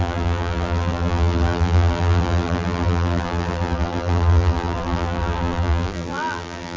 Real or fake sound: fake